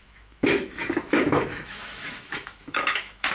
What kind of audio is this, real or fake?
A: fake